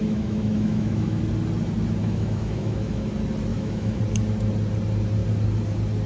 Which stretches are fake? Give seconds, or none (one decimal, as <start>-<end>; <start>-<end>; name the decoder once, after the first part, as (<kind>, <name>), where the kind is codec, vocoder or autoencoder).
0.0-1.2 (autoencoder, DAC-VAE); 2.0-3.1; 3.5-4.0